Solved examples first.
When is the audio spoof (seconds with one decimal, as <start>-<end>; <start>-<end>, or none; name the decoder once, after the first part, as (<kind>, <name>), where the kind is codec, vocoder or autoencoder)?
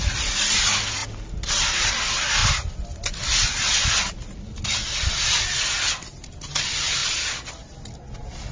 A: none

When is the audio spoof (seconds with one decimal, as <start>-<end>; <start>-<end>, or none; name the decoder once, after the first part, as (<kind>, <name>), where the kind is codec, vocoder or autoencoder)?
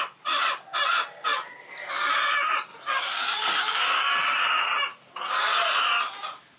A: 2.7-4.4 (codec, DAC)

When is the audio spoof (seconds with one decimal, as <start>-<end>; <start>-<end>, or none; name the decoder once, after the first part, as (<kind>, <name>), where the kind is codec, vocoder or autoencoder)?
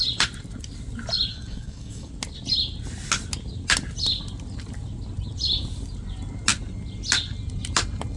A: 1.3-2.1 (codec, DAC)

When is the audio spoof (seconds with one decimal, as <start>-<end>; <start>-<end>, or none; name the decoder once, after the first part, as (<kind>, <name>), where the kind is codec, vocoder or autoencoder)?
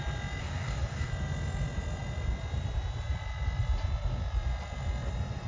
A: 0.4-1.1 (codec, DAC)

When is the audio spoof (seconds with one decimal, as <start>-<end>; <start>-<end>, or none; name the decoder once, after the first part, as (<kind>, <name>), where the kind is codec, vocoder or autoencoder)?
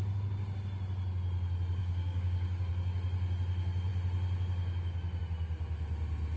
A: 1.8-2.7 (codec, DAC)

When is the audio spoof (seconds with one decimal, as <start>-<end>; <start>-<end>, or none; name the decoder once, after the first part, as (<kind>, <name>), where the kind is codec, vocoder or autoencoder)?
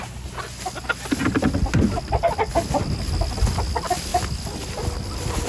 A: none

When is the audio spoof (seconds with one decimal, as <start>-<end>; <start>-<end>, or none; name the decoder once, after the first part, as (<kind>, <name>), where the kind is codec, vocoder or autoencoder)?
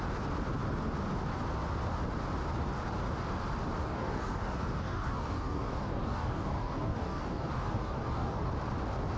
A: 3.8-8.5 (codec, DAC)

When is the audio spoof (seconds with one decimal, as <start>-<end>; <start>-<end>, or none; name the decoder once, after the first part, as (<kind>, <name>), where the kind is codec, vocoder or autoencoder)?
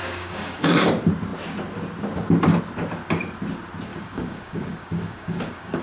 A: 0.0-0.9 (codec, DAC); 3.9-5.8